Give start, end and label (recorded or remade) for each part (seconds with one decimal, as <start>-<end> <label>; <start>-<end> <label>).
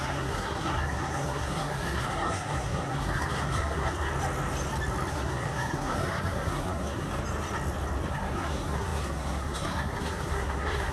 0.0-4.1 remade; 4.1-5.1 recorded; 5.1-7.1 remade; 7.1-8.1 recorded; 8.1-10.9 remade